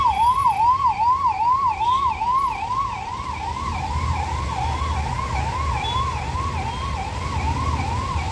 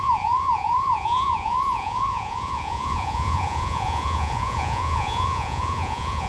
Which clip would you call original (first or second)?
first